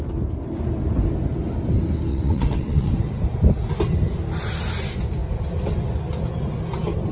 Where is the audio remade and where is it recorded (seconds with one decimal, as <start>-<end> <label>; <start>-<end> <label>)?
0.0-2.1 recorded; 2.1-2.9 remade; 2.9-7.1 recorded